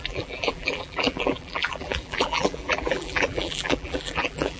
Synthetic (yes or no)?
yes